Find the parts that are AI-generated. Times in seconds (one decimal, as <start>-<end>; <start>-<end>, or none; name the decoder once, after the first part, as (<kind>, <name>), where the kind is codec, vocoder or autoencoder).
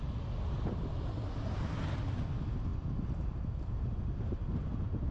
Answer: none